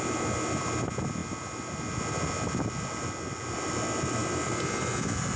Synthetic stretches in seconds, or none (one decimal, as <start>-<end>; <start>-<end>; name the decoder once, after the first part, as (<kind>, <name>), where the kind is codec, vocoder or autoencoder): none

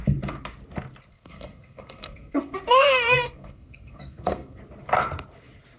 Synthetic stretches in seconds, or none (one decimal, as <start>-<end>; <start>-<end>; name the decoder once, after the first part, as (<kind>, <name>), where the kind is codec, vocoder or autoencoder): 1.1-4.6 (codec, SNAC)

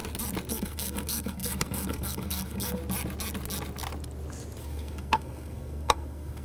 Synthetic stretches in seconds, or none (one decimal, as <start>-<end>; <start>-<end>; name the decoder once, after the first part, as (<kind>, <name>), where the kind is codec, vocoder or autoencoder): 0.5-2.8 (codec, SNAC); 4.6-6.4